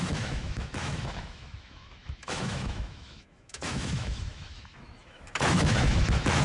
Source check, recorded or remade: remade